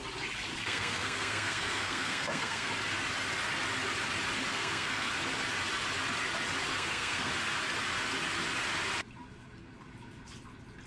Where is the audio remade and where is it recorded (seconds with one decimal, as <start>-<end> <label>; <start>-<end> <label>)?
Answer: 0.0-0.6 recorded; 0.6-2.7 remade; 2.7-4.5 recorded; 4.5-5.1 remade; 5.1-6.7 recorded; 6.7-7.3 remade; 7.3-10.9 recorded